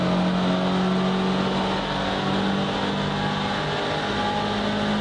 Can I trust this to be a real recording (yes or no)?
yes